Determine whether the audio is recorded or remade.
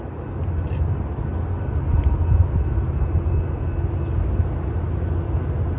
recorded